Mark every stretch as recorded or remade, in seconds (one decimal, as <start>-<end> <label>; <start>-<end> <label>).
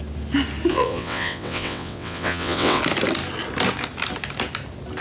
0.0-0.7 recorded; 0.7-2.8 remade; 2.8-5.0 recorded